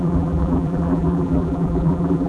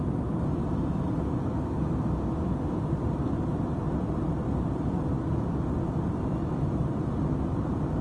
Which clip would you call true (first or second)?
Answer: second